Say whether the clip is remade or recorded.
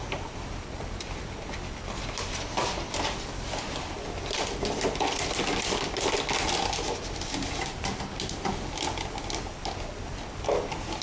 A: recorded